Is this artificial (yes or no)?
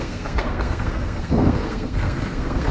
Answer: yes